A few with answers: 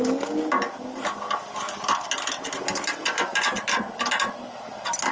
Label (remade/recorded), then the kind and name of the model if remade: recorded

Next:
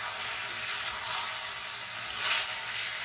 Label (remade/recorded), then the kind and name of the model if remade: recorded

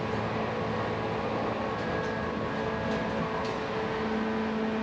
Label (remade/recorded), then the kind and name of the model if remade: recorded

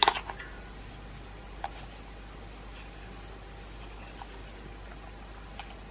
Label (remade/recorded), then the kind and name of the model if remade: recorded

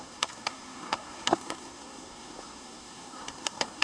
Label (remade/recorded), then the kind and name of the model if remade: remade, codec, SNAC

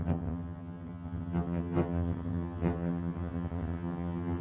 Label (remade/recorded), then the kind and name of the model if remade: remade, vocoder, HiFi-GAN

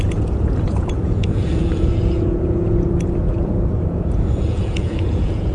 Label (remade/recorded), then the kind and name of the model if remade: remade, vocoder, Vocos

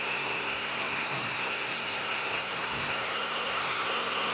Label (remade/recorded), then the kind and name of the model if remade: remade, codec, SNAC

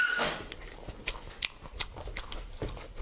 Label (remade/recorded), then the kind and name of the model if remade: recorded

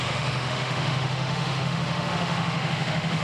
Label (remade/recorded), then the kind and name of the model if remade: remade, autoencoder, DAC-VAE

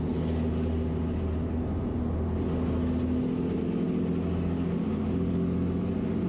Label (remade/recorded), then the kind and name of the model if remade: recorded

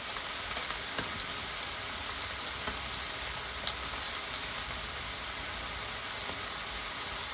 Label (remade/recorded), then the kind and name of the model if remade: recorded